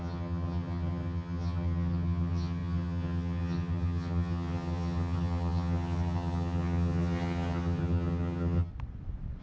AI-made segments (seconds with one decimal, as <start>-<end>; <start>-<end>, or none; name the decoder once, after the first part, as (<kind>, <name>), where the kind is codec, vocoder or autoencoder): 0.0-8.7 (vocoder, HiFi-GAN)